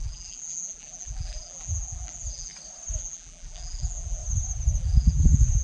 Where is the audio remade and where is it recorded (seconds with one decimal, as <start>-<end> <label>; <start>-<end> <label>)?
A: 0.0-2.5 remade; 2.5-3.0 recorded; 3.0-4.2 remade; 4.2-4.8 recorded; 4.8-5.6 remade